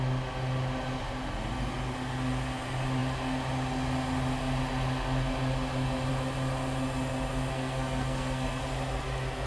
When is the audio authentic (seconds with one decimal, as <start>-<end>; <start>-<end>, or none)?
0.0-7.5; 8.6-9.5